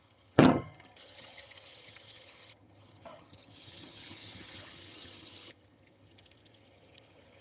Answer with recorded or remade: remade